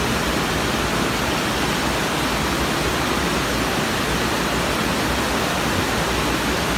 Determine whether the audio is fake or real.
real